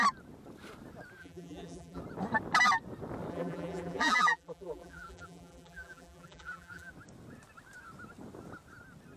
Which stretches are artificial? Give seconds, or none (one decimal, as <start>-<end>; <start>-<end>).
1.2-2.0; 3.3-6.9

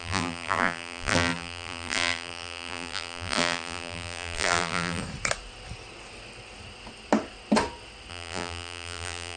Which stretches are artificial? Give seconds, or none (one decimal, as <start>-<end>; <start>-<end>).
0.0-5.0; 8.1-9.4

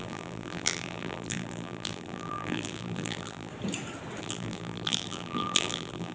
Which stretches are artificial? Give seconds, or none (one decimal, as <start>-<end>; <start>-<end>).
0.0-3.5; 4.2-6.1

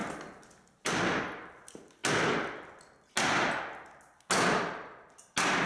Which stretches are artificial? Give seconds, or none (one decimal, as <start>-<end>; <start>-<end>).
0.0-2.0